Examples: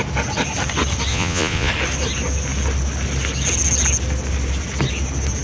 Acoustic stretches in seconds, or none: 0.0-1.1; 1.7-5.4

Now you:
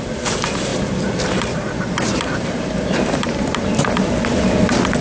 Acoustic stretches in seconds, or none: 0.0-0.7; 3.7-5.0

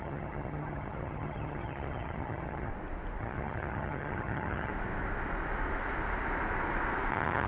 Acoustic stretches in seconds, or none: 2.7-3.2; 4.7-7.1